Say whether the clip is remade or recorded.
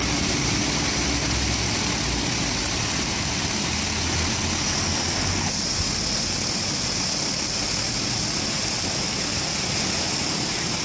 recorded